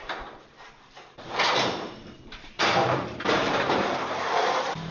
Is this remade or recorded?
remade